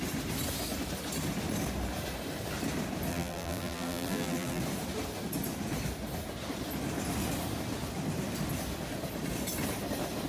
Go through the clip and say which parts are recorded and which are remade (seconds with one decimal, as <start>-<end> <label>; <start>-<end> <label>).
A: 0.0-3.1 recorded; 3.1-4.6 remade; 4.6-10.3 recorded